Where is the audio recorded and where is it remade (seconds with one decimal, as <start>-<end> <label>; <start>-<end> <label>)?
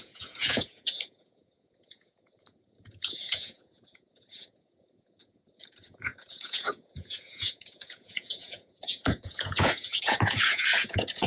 0.0-11.3 remade